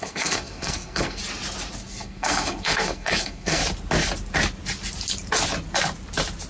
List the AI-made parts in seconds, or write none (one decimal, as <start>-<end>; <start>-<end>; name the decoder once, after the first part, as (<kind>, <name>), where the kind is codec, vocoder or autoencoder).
0.0-1.2 (codec, SNAC); 1.9-3.6